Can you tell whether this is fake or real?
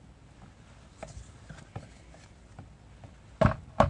real